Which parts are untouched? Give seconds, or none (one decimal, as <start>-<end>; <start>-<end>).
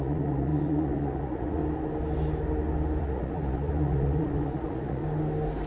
1.6-3.0; 5.0-5.7